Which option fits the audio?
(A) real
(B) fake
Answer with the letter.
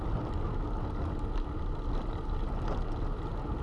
A